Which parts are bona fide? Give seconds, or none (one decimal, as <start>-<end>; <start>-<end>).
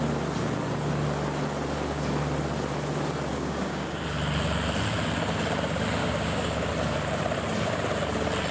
0.0-3.3; 4.0-6.0; 6.7-8.5